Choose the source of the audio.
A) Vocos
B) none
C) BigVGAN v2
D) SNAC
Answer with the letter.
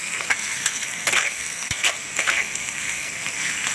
D